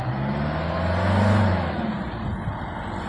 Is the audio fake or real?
real